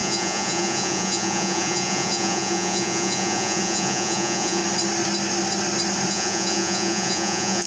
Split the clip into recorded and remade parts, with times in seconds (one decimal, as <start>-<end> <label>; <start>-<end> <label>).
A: 0.0-4.6 remade; 4.6-6.1 recorded; 6.1-7.7 remade